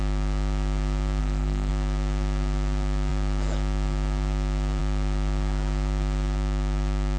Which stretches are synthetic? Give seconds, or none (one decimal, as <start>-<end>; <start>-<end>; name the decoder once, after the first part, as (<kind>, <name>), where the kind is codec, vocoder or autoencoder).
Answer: 1.2-1.7 (codec, SNAC)